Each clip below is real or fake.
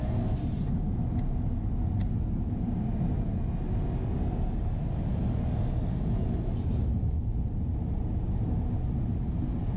real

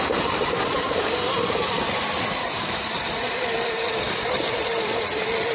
fake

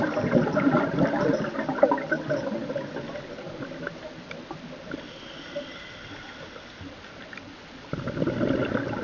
real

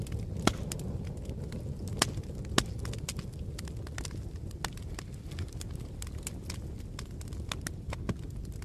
real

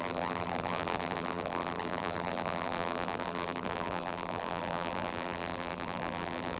fake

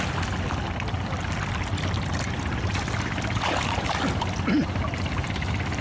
real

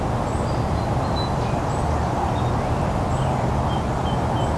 real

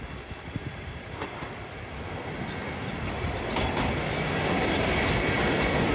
real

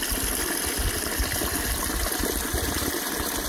real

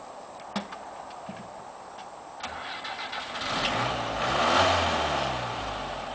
real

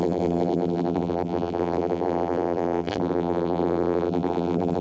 fake